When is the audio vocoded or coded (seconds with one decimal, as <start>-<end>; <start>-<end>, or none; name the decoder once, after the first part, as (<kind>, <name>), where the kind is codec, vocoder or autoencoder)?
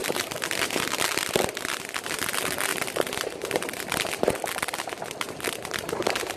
0.0-0.9 (vocoder, BigVGAN v2); 2.7-4.3